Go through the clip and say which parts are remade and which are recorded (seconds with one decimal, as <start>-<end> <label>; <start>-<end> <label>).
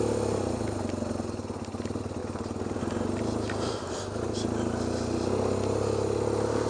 0.0-6.7 recorded